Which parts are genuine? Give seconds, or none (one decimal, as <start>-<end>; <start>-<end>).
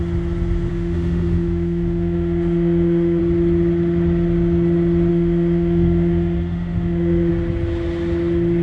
0.0-0.7; 3.2-5.1; 7.3-8.6